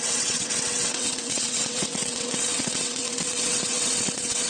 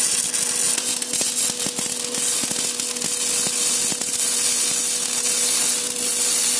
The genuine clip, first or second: second